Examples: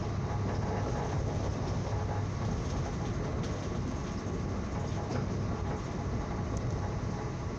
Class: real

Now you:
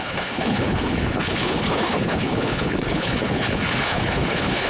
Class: fake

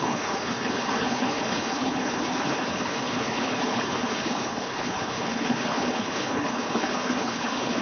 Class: fake